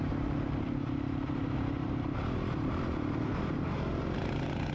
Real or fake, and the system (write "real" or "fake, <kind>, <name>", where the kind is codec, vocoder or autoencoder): fake, vocoder, BigVGAN v2